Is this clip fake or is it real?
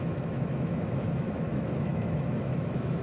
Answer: fake